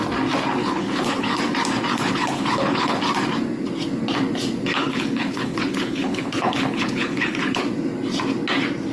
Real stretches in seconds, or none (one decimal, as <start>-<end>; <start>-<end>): 0.0-0.6; 1.4-1.9; 3.0-4.7; 7.6-8.9